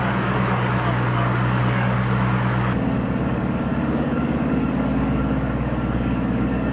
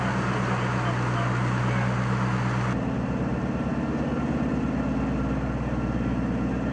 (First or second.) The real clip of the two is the second